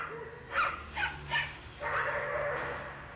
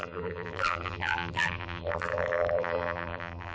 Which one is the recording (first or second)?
first